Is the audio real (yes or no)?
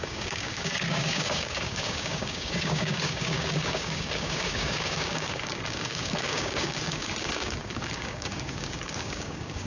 no